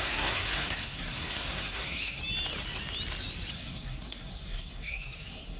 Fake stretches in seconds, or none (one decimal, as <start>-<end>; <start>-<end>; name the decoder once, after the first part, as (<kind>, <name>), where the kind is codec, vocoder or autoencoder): 0.0-2.2 (codec, SNAC); 3.5-5.6